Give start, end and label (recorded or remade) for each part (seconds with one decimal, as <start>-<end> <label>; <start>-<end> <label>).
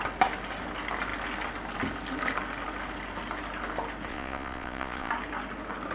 0.0-4.1 recorded; 4.1-5.1 remade; 5.1-5.9 recorded